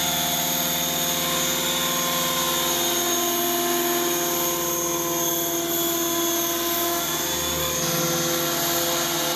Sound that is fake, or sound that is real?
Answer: real